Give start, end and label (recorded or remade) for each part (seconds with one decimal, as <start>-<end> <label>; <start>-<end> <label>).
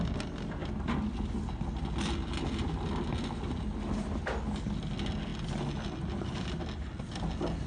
0.0-7.7 recorded